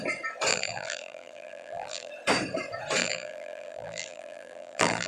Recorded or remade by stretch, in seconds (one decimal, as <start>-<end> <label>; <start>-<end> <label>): 0.0-0.5 recorded; 0.5-2.1 remade; 2.1-3.0 recorded; 3.0-5.1 remade